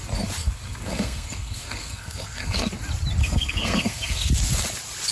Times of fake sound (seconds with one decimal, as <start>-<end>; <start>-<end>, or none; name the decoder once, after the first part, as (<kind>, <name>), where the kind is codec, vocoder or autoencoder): 0.4-2.7 (codec, SNAC); 3.2-4.3